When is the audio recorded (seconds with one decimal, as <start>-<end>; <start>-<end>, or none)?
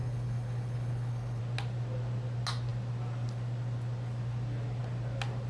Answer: 1.4-5.5